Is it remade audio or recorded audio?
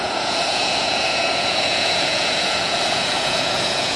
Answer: remade